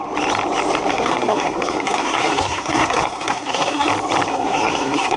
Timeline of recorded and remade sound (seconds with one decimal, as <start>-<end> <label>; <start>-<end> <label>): 0.0-0.9 recorded; 0.9-3.9 remade; 3.9-4.3 recorded; 4.3-5.2 remade